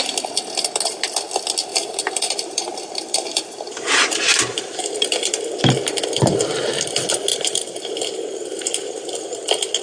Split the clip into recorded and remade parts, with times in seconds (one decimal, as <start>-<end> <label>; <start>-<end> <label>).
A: 0.0-1.7 recorded; 1.7-5.6 remade; 5.6-7.3 recorded; 7.3-7.9 remade; 7.9-8.5 recorded; 8.5-9.1 remade; 9.1-9.8 recorded